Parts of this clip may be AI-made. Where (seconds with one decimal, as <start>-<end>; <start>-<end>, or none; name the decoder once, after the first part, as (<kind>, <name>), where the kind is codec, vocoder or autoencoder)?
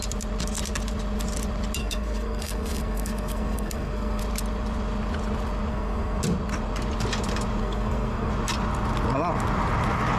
1.8-4.2 (codec, SNAC); 5.7-6.2; 7.6-8.3